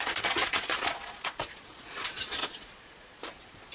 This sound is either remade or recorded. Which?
remade